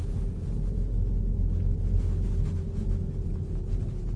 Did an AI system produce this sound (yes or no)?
no